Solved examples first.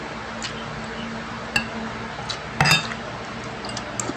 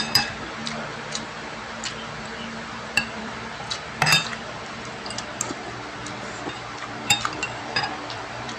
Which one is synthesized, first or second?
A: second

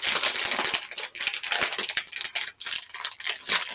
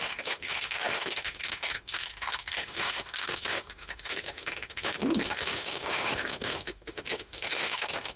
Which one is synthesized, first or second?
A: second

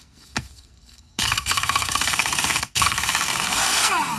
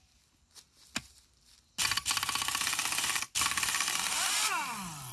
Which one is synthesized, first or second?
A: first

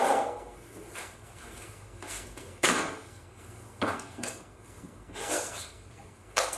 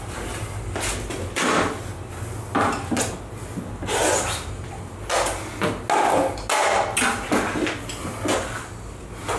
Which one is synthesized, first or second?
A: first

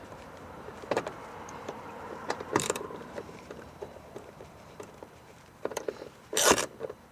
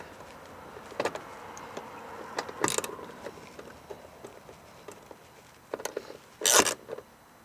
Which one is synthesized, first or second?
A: first